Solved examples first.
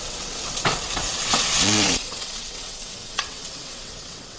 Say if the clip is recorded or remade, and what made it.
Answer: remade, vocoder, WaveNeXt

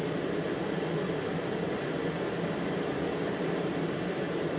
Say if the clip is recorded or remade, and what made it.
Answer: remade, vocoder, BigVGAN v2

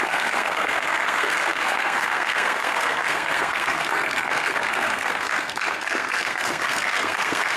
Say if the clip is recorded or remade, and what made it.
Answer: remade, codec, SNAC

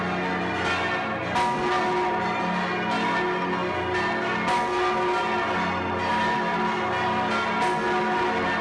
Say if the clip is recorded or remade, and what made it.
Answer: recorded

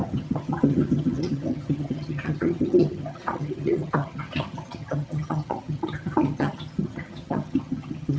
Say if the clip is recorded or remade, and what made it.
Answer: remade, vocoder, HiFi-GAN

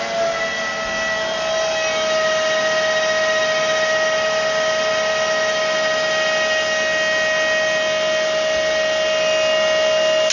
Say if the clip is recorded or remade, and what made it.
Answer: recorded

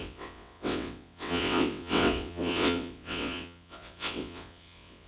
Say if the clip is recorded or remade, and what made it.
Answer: remade, vocoder, WaveNeXt